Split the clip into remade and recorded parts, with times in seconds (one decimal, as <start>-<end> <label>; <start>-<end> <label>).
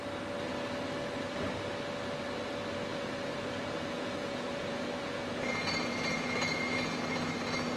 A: 0.0-2.9 recorded; 2.9-7.8 remade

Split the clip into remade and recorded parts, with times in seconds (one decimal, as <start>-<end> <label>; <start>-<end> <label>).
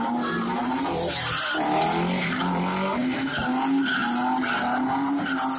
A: 0.0-5.6 recorded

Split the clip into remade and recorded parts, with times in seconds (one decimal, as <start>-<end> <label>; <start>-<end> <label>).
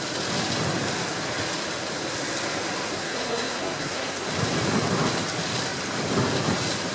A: 0.0-2.9 recorded; 2.9-4.3 remade; 4.3-6.9 recorded